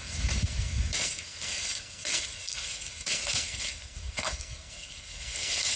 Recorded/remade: remade